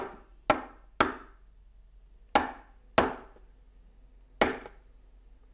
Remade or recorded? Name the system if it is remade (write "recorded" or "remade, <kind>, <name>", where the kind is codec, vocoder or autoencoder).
recorded